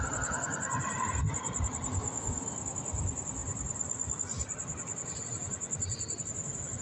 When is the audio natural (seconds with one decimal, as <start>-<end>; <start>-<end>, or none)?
0.0-6.8